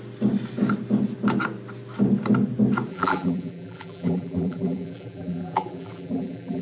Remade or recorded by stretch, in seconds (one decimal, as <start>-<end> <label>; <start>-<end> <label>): 0.0-2.9 recorded; 2.9-6.6 remade